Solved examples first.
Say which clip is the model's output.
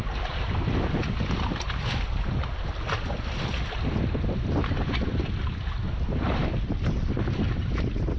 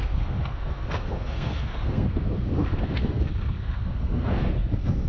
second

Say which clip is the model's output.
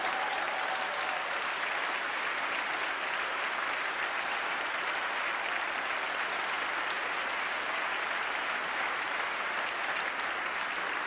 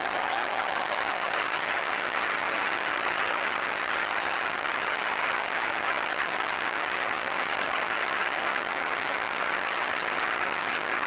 second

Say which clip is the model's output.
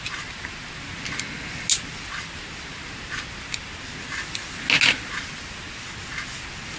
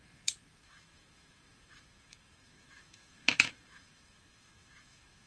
second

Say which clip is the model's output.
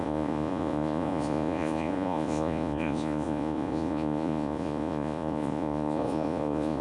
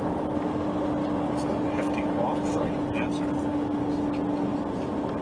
first